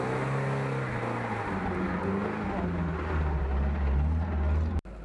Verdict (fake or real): real